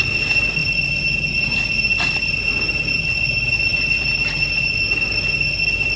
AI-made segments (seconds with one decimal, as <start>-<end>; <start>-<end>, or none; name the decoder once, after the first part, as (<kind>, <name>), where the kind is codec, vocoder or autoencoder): none